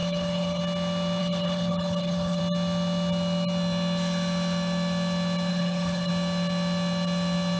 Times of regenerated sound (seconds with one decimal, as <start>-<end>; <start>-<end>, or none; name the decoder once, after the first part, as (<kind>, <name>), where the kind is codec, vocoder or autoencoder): 0.0-0.6 (codec, HILCodec); 1.2-2.4; 5.5-6.1